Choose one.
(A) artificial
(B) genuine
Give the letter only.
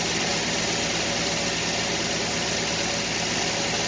B